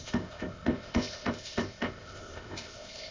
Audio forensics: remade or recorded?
remade